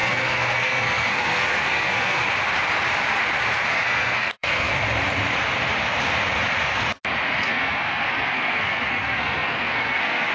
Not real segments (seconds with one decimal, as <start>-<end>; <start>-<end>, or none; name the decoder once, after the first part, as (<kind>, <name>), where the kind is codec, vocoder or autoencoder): 0.0-2.2 (codec, SNAC); 3.7-4.7; 7.4-10.3